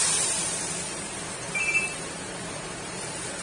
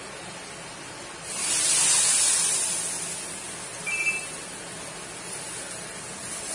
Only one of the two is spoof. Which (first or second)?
first